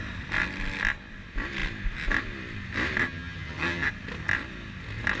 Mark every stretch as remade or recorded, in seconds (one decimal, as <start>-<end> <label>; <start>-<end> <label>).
0.0-3.0 recorded; 3.0-3.9 remade; 3.9-5.2 recorded